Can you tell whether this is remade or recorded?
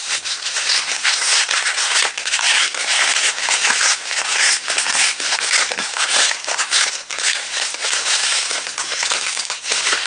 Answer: remade